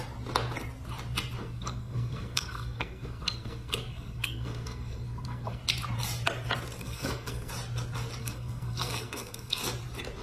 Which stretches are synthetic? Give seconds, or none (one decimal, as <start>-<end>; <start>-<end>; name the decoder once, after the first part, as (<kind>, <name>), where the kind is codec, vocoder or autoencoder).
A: 1.4-5.6 (codec, SNAC); 6.8-7.5; 8.2-9.6

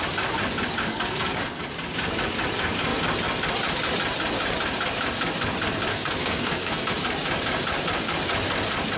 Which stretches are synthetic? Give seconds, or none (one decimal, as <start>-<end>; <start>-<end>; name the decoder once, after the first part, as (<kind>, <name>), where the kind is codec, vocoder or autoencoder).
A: 0.9-1.6 (codec, SNAC); 5.9-6.9